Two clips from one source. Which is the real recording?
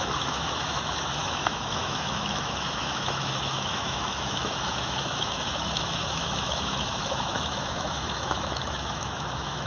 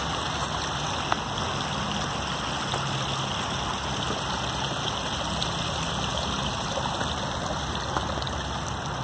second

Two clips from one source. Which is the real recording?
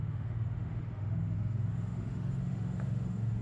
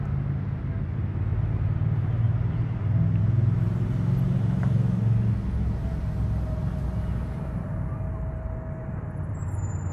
second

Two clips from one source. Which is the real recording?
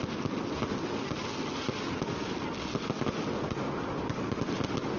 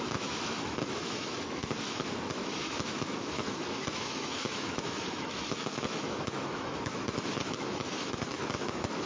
first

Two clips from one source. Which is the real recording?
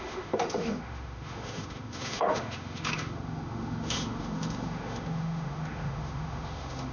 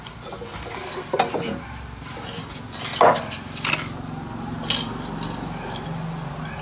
second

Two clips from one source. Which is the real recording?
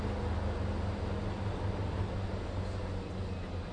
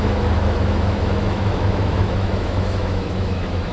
first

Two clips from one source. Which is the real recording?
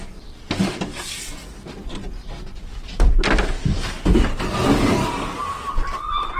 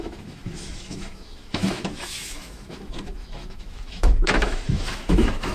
first